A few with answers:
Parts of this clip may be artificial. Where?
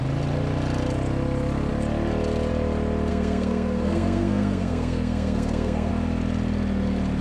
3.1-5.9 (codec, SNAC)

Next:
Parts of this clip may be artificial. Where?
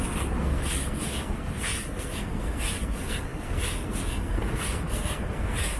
0.0-5.8 (codec, SNAC)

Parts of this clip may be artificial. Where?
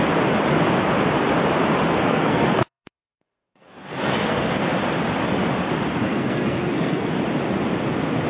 1.9-4.6 (codec, SNAC); 6.0-7.1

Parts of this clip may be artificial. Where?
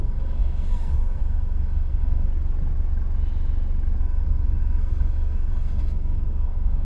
0.0-2.3 (codec, SNAC); 4.0-6.8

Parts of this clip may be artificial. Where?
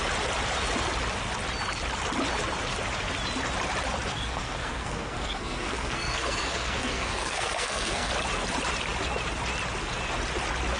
4.1-8.1 (codec, SNAC)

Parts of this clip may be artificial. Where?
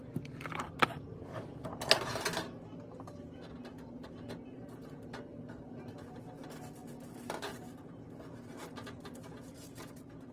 none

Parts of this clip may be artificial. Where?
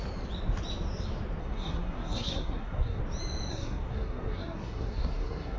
1.4-3.0 (codec, SNAC); 3.5-5.6